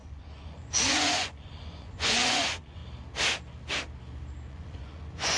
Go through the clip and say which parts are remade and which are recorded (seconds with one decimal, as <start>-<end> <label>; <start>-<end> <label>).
0.0-2.8 remade; 2.8-4.5 recorded; 4.5-5.4 remade